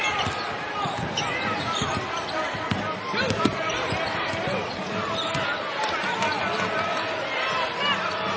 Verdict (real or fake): real